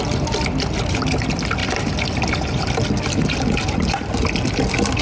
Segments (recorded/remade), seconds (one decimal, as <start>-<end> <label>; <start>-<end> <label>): 0.0-5.0 recorded